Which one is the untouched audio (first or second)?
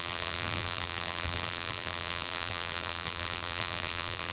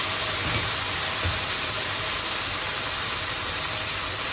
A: second